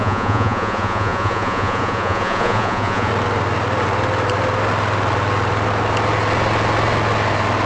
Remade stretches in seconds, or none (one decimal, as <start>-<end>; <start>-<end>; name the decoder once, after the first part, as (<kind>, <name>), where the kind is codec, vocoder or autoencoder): 0.0-3.1 (vocoder, Vocos)